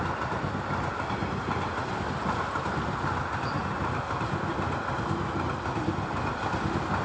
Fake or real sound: real